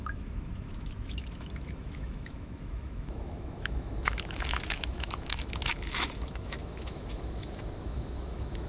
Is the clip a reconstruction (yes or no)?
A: yes